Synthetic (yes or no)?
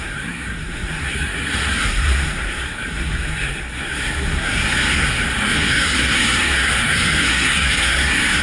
yes